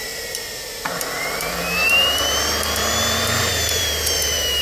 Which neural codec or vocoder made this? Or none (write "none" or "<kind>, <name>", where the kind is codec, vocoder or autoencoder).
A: vocoder, BigVGAN v2